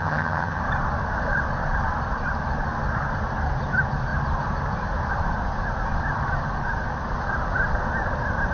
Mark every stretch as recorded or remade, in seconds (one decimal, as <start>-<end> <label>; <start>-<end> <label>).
0.0-0.6 remade; 0.6-8.5 recorded

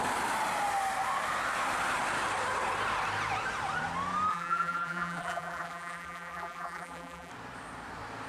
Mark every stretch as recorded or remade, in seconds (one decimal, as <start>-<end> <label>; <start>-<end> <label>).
0.0-4.3 recorded; 4.3-7.3 remade; 7.3-8.3 recorded

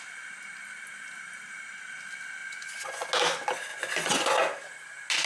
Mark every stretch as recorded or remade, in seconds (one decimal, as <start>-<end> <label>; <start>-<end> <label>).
0.0-2.4 recorded; 2.4-3.1 remade; 3.1-3.7 recorded; 3.7-4.3 remade; 4.3-5.3 recorded